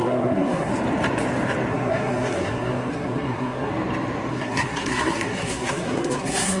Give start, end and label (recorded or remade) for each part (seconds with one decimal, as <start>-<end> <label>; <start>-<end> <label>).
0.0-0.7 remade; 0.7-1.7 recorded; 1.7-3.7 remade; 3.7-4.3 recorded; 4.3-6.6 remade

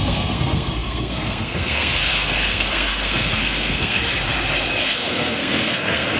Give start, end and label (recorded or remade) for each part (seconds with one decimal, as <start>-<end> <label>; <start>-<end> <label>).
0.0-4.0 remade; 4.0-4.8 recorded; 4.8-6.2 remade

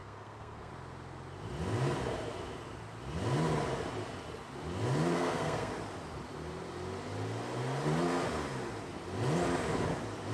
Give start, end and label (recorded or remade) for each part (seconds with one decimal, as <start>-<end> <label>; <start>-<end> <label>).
0.0-0.7 remade; 0.7-5.1 recorded; 5.1-5.7 remade; 5.7-10.3 recorded

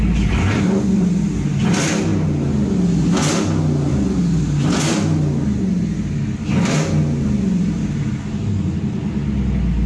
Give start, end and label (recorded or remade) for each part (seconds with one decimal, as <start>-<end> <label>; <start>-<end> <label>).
0.0-9.9 recorded

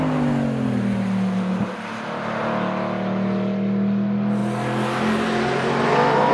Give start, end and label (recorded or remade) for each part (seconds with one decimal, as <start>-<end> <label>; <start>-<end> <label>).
0.0-6.3 recorded